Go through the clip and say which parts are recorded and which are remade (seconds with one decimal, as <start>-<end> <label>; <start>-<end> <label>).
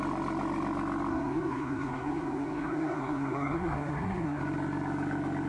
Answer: 0.0-1.1 recorded; 1.1-4.4 remade; 4.4-5.5 recorded